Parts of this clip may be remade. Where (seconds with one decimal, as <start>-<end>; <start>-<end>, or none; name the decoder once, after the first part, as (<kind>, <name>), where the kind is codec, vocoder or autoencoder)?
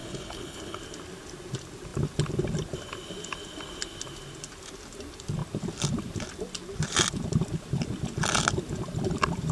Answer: 0.0-0.8 (codec, HILCodec)